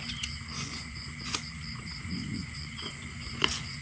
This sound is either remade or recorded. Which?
remade